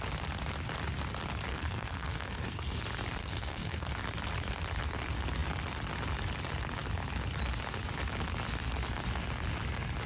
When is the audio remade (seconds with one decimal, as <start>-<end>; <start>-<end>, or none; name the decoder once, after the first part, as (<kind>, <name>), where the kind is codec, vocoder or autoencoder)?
1.5-2.8 (codec, SNAC); 3.2-3.9